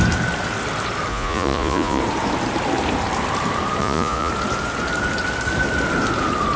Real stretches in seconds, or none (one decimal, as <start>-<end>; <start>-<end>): 0.0-1.1; 2.0-3.8; 4.3-6.6